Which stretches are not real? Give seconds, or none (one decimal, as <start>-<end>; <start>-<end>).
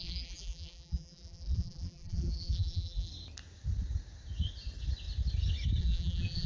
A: 0.0-3.1; 5.8-6.5